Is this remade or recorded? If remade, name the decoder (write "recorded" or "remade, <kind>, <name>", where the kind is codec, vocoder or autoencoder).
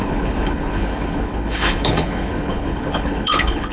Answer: remade, codec, HILCodec